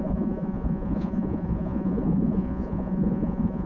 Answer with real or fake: fake